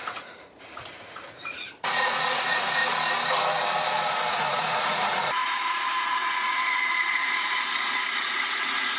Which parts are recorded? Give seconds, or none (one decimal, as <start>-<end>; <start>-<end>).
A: 2.8-4.3